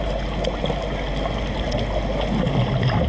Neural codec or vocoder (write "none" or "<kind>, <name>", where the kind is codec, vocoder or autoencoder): none